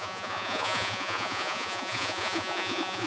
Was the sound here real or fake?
fake